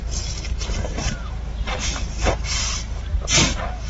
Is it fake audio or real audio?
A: real